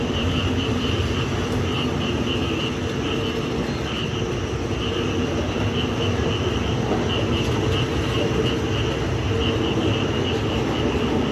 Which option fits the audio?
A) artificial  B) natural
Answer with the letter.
B